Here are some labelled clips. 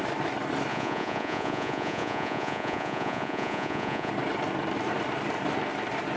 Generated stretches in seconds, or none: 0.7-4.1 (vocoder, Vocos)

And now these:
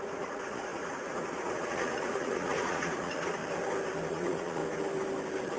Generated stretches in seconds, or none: 0.0-3.4 (vocoder, Vocos); 4.1-4.6